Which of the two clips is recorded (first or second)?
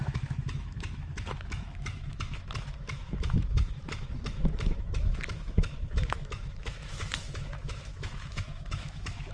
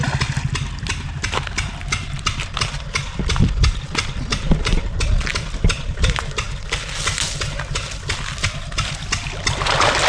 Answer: second